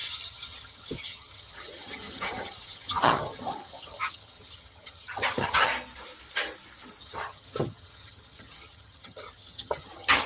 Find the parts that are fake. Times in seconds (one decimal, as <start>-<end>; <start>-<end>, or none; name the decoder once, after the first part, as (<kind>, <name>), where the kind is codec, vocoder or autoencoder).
0.0-5.7 (vocoder, HiFi-GAN); 7.0-10.3